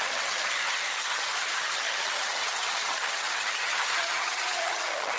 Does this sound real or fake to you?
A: fake